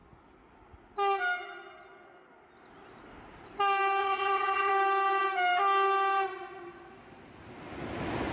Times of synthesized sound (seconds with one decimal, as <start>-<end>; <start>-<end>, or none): 4.0-4.7